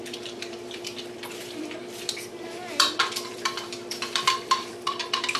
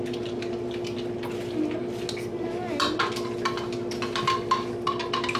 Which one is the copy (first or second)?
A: first